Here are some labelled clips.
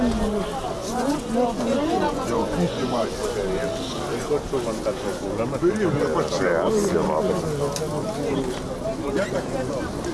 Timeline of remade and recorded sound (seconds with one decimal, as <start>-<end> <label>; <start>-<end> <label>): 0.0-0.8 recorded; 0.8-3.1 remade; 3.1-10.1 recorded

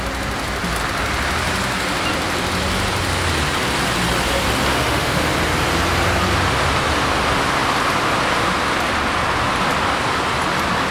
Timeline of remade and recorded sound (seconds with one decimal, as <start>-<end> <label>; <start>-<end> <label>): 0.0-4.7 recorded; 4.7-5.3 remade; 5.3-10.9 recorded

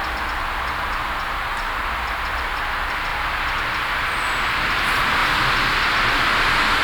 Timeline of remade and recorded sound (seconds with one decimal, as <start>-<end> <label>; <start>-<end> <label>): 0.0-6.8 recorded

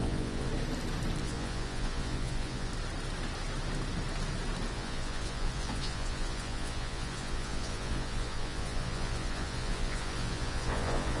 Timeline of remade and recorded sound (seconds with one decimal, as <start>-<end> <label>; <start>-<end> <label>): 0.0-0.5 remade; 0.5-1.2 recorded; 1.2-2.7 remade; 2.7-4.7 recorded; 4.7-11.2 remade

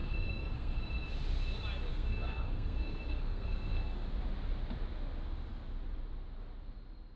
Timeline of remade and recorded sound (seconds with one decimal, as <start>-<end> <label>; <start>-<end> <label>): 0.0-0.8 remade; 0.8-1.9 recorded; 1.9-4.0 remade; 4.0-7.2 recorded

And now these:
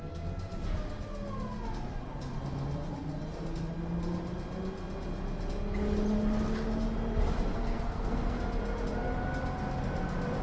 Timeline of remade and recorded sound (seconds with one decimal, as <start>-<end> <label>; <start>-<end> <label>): 0.0-7.5 recorded; 7.5-8.4 remade; 8.4-10.4 recorded

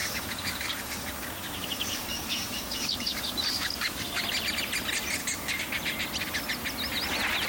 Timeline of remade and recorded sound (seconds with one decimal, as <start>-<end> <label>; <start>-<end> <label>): 0.0-4.2 remade; 4.2-5.2 recorded; 5.2-5.7 remade; 5.7-7.5 recorded

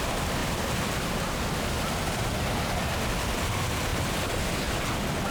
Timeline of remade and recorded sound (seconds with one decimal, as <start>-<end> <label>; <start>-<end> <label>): 0.0-5.3 recorded